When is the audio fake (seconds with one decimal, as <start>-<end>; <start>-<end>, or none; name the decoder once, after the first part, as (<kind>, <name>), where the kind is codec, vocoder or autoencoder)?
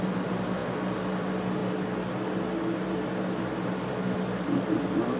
none